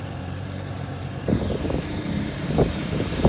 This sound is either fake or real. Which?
fake